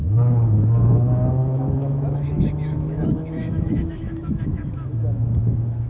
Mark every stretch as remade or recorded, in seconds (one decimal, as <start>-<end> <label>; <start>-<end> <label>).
0.0-5.9 remade

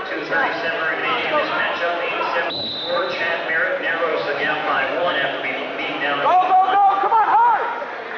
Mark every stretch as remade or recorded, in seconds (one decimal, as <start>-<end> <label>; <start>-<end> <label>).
0.0-4.1 recorded; 4.1-5.1 remade; 5.1-8.2 recorded

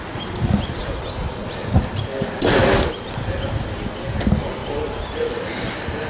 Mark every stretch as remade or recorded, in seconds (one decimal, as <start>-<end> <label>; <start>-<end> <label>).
0.0-6.1 recorded

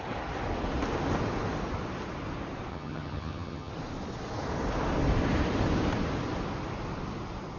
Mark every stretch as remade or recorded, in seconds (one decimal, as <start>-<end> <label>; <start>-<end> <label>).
0.0-2.7 recorded; 2.7-3.7 remade; 3.7-7.6 recorded